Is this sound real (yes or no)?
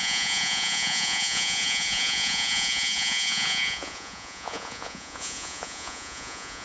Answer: no